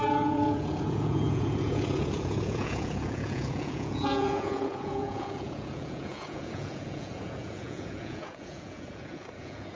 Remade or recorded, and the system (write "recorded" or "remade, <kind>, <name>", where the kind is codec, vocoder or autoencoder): remade, vocoder, Vocos